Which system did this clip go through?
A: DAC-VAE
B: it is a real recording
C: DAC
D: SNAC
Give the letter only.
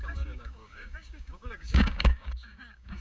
C